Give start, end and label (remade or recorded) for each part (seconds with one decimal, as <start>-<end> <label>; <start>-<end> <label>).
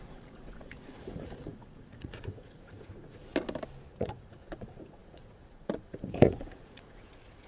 0.0-3.3 remade; 3.3-3.9 recorded; 3.9-7.5 remade